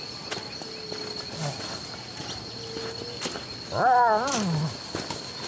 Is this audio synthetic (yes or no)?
no